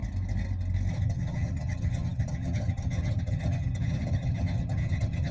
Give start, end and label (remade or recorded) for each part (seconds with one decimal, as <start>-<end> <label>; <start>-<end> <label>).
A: 0.0-0.9 recorded; 0.9-5.3 remade